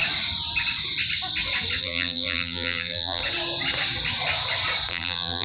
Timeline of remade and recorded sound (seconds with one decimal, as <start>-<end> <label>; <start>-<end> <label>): 0.0-1.8 recorded; 1.8-3.2 remade; 3.2-4.9 recorded; 4.9-5.4 remade